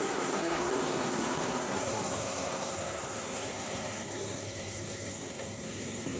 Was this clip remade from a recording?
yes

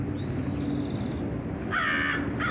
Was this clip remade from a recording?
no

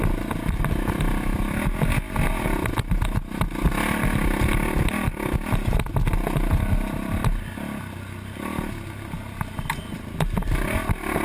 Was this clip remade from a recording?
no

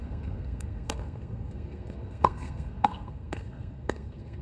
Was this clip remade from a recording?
yes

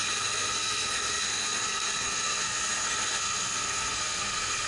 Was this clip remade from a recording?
yes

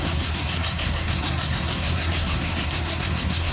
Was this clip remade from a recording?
yes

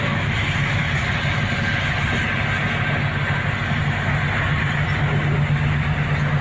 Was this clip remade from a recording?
no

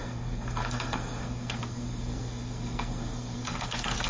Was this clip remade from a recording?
yes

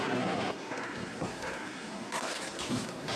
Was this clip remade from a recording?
yes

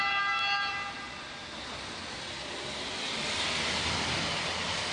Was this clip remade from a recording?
no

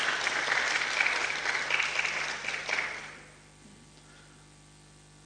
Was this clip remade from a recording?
no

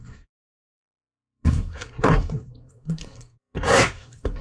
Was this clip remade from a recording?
yes